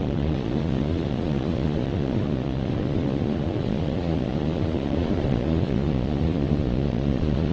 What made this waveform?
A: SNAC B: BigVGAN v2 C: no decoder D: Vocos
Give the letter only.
D